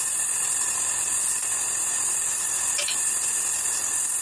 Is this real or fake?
real